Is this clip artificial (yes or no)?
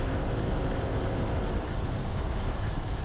no